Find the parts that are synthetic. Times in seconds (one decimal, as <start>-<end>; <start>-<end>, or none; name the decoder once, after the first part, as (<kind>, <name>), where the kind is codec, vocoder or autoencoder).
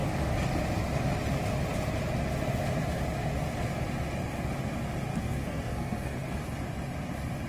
5.1-6.4 (codec, SNAC)